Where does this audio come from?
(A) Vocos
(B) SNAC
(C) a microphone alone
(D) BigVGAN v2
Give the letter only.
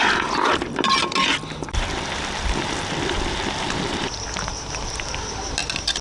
C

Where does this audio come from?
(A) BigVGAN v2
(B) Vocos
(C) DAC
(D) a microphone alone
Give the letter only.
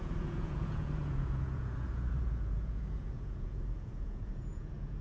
B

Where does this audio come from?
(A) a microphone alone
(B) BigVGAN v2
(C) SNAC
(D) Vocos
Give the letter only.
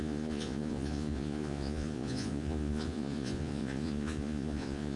D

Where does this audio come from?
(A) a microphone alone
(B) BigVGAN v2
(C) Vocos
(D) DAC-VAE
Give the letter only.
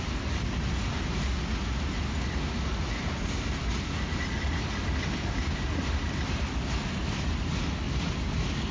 A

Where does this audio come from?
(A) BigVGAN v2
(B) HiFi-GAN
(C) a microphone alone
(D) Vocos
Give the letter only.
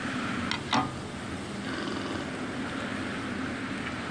C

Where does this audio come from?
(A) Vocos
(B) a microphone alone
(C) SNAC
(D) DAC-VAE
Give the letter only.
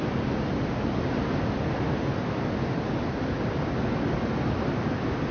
B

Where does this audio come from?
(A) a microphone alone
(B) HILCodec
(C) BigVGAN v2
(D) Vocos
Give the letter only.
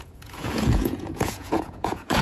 D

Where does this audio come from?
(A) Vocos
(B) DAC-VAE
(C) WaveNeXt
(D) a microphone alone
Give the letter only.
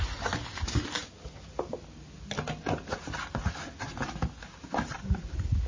D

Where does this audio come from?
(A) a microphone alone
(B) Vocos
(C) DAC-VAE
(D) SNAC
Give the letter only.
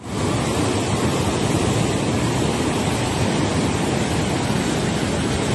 A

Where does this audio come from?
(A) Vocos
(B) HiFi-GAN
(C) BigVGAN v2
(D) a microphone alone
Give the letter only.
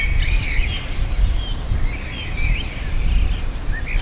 D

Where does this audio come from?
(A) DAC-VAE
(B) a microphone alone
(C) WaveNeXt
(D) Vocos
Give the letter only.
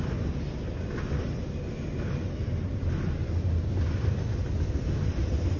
B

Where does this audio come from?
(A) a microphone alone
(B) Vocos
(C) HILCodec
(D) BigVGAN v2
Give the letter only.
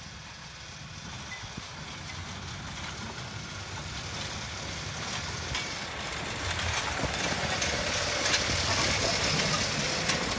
A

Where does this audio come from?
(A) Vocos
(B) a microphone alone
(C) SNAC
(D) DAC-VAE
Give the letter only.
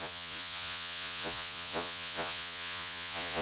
A